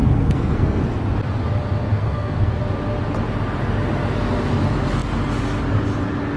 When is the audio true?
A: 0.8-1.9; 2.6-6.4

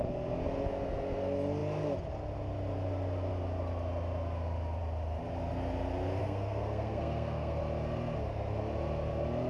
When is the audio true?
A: 0.0-6.2; 7.6-9.5

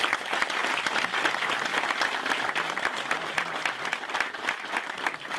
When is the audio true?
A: 0.0-5.4

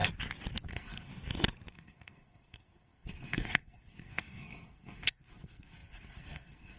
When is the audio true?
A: 0.0-0.7; 1.1-1.7

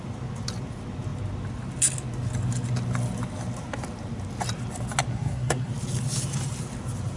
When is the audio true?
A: 0.0-5.1; 5.7-7.2